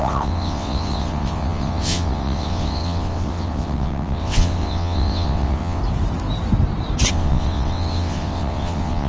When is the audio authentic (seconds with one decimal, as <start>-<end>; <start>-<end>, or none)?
5.8-7.1